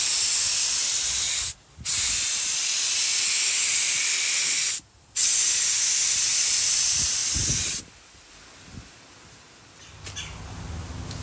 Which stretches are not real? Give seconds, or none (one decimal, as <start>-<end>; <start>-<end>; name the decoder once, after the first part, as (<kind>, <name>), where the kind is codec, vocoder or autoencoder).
7.2-8.4 (vocoder, BigVGAN v2)